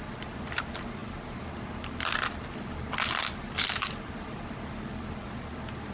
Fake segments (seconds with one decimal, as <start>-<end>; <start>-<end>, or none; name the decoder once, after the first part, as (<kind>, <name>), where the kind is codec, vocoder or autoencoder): none